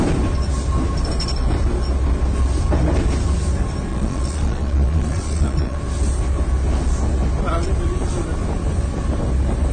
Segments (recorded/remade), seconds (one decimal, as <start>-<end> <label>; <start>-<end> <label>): 0.0-3.9 recorded; 3.9-5.8 remade; 5.8-9.7 recorded